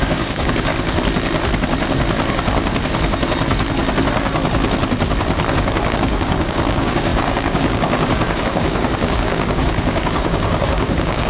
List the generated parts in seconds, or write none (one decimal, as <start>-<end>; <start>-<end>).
0.0-0.7; 5.9-11.3